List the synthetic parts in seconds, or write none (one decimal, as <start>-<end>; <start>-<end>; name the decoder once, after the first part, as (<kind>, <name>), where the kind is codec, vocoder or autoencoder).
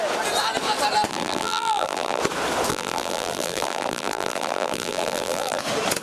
1.1-2.2 (vocoder, BigVGAN v2); 2.7-5.6